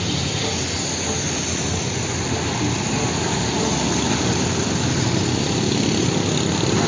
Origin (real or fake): real